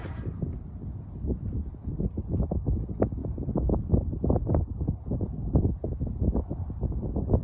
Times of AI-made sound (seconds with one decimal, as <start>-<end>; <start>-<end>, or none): none